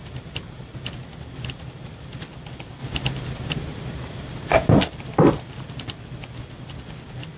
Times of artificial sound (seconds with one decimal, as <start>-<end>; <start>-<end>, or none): none